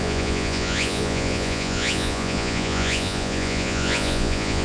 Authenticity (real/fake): fake